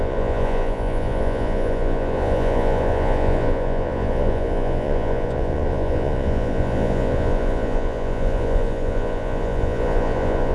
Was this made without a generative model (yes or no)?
no